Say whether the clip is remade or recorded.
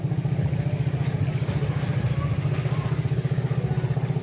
recorded